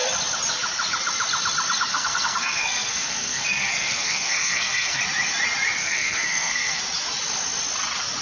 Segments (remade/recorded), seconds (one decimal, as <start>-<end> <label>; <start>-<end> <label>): 0.0-1.9 recorded; 1.9-5.0 remade; 5.0-5.8 recorded; 5.8-6.8 remade; 6.8-8.2 recorded